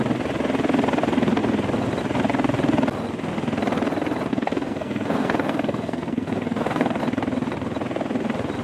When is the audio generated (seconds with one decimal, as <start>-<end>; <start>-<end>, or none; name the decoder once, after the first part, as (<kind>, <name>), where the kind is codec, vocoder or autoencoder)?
4.3-7.0 (codec, SNAC)